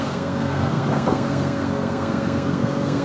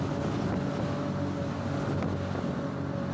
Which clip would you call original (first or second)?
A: second